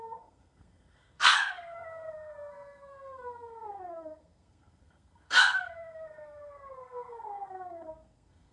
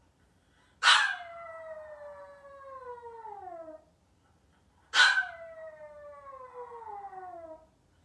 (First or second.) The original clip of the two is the second